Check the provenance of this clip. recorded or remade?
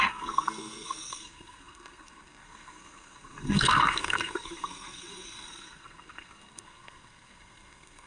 remade